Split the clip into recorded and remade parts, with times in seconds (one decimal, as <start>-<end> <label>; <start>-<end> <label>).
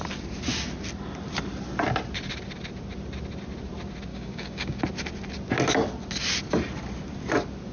0.0-4.1 recorded; 4.1-4.8 remade; 4.8-7.7 recorded